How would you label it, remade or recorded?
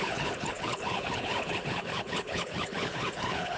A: remade